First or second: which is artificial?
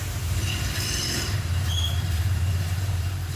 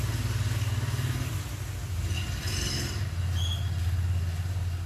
first